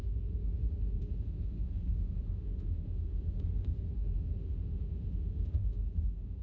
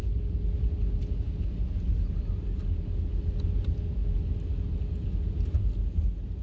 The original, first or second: second